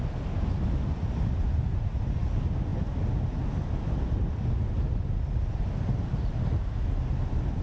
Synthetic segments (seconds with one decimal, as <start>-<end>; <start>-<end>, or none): none